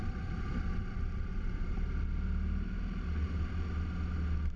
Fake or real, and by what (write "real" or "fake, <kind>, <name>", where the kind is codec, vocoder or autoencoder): real